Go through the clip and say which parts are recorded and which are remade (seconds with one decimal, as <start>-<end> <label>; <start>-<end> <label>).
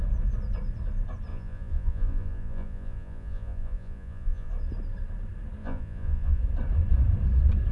0.0-1.3 recorded; 1.3-4.5 remade; 4.5-5.6 recorded; 5.6-6.4 remade; 6.4-7.7 recorded